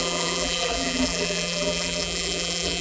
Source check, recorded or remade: remade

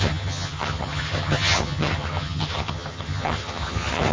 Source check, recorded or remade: remade